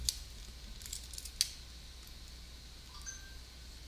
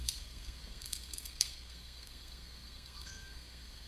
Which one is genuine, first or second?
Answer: first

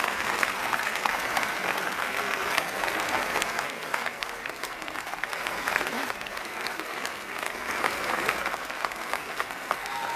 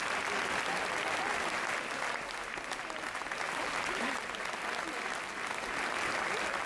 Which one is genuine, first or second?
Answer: second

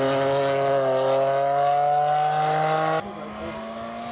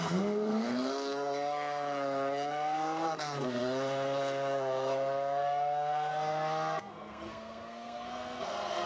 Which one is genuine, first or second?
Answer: first